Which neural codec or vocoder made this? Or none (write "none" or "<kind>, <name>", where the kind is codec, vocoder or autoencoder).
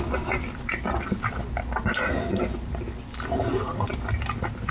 none